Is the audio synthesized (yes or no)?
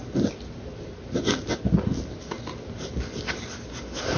no